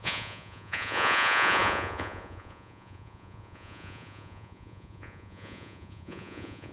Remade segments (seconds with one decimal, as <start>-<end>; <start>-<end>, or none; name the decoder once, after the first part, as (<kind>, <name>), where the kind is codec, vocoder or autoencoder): 0.0-6.7 (vocoder, Vocos)